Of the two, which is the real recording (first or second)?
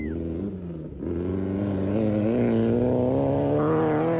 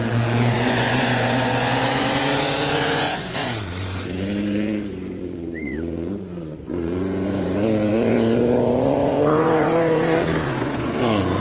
first